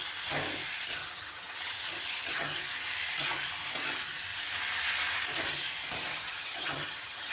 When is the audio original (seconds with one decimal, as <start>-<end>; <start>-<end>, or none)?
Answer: 0.0-1.0; 2.6-6.1